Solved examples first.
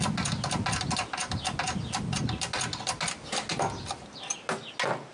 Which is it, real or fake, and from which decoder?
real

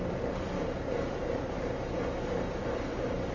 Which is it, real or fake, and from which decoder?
fake, vocoder, BigVGAN v2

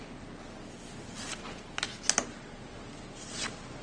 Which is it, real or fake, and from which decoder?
real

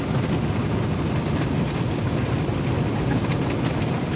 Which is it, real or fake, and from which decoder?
real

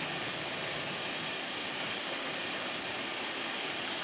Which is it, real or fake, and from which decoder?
real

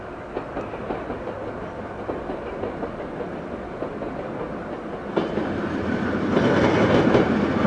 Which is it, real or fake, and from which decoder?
real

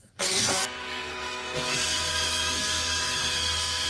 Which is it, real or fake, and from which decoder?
fake, codec, SNAC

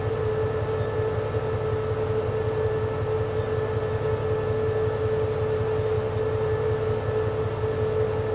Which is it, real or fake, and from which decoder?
real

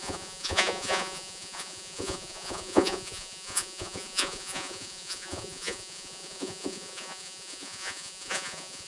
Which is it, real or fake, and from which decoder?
fake, vocoder, Vocos